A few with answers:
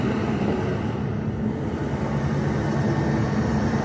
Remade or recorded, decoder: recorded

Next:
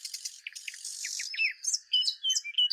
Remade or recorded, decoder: recorded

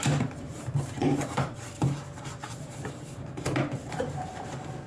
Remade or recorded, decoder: remade, vocoder, BigVGAN v2